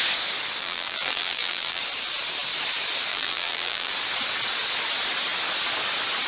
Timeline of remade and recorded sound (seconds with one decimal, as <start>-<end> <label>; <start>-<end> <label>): 0.0-0.6 recorded; 0.6-1.8 remade; 1.8-3.1 recorded; 3.1-3.9 remade; 3.9-6.3 recorded